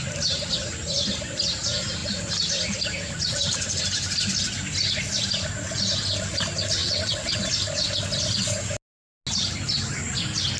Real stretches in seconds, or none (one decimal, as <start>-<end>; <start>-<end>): 0.0-6.8; 7.4-10.6